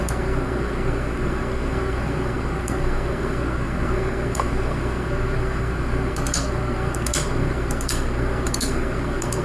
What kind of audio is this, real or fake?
fake